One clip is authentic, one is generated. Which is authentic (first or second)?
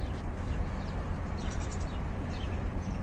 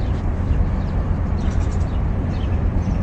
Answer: first